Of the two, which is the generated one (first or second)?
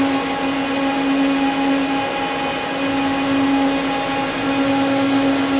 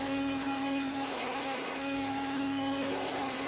second